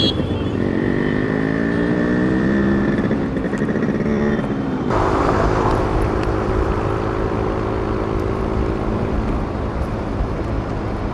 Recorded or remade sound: remade